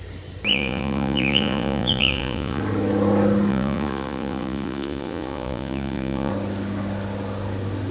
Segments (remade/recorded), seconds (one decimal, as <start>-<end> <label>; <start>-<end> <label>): 0.0-0.5 recorded; 0.5-2.6 remade; 2.6-3.5 recorded; 3.5-6.3 remade; 6.3-7.9 recorded